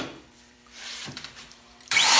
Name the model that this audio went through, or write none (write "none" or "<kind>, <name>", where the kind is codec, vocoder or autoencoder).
vocoder, BigVGAN v2